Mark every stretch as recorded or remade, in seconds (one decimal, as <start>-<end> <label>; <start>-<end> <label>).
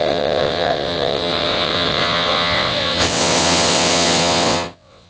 0.0-5.1 remade